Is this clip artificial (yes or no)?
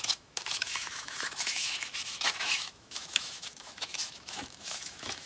yes